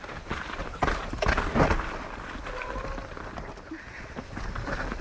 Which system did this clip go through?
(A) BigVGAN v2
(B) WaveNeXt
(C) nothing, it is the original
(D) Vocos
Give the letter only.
C